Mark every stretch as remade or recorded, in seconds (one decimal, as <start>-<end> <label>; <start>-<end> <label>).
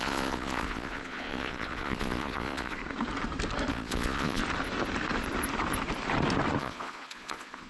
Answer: 0.0-2.8 remade; 2.8-3.7 recorded; 3.7-4.4 remade; 4.4-6.6 recorded; 6.6-7.7 remade